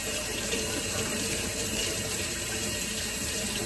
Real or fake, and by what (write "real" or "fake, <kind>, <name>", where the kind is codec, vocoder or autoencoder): fake, vocoder, BigVGAN v2